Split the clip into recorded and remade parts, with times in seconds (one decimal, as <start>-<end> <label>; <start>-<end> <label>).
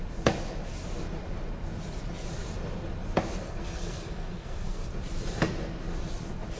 0.0-3.4 recorded; 3.4-4.9 remade; 4.9-6.6 recorded